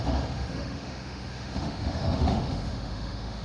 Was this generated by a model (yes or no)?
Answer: yes